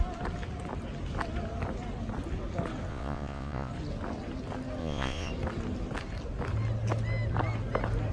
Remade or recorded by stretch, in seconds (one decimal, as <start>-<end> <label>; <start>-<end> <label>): 0.0-2.9 recorded; 2.9-3.7 remade; 3.7-4.8 recorded; 4.8-5.3 remade; 5.3-8.1 recorded